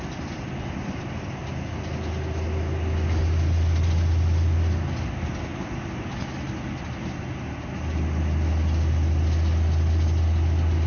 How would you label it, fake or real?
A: real